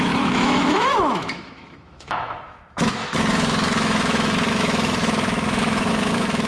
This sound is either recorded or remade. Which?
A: remade